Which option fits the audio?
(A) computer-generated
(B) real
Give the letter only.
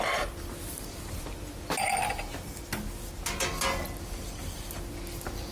B